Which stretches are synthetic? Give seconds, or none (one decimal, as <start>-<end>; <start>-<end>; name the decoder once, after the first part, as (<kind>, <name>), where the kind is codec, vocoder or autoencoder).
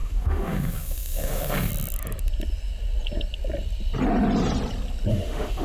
0.0-1.7 (autoencoder, DAC-VAE); 5.1-5.6